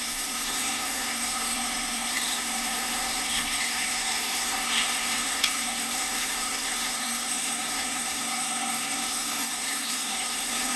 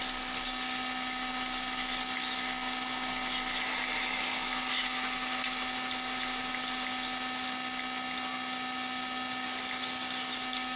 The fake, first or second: first